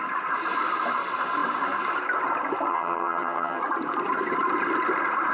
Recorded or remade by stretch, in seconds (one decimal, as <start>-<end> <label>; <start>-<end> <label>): 0.0-2.7 recorded; 2.7-3.6 remade; 3.6-5.3 recorded